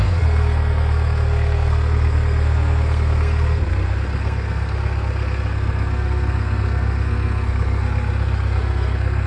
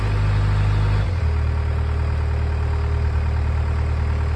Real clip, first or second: second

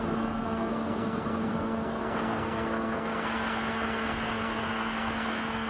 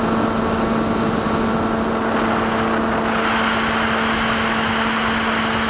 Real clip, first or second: second